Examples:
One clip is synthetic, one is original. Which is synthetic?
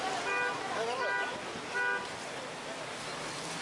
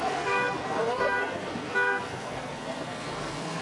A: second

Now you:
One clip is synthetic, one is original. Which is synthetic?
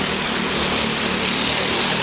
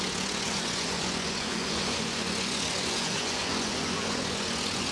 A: second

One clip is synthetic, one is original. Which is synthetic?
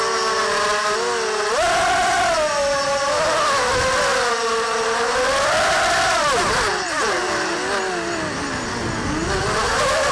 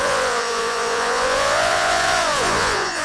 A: second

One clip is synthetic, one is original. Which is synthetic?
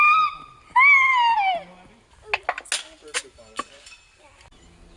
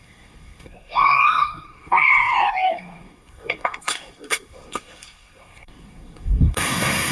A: second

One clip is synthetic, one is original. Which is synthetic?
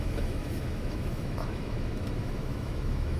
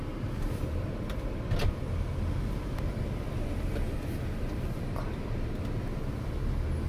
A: first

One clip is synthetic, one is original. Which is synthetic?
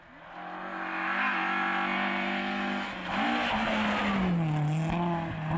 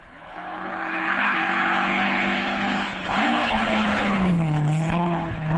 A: second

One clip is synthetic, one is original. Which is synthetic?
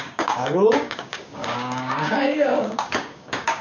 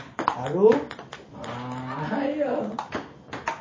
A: first